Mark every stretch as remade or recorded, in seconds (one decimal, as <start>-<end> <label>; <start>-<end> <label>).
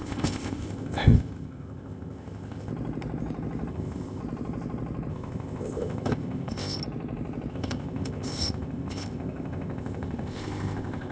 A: 0.0-2.7 remade; 2.7-3.7 recorded; 3.7-4.2 remade; 4.2-5.1 recorded; 5.1-6.8 remade; 6.8-7.5 recorded; 7.5-11.1 remade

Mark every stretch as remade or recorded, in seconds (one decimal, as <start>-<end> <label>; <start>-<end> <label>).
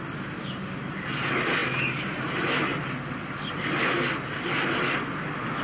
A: 0.0-5.6 recorded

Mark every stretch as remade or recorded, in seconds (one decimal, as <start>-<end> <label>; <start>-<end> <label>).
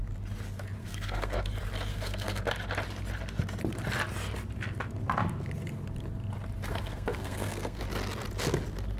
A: 0.0-0.8 recorded; 0.8-1.5 remade; 1.5-1.9 recorded; 1.9-2.4 remade; 2.4-6.7 recorded; 6.7-7.8 remade; 7.8-9.0 recorded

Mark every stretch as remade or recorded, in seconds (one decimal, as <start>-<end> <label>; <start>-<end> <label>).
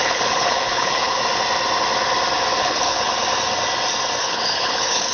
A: 0.0-1.2 remade; 1.2-2.6 recorded; 2.6-3.1 remade; 3.1-4.2 recorded; 4.2-5.1 remade